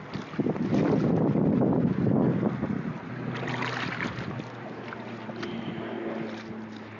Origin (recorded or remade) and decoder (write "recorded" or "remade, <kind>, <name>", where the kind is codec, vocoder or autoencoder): recorded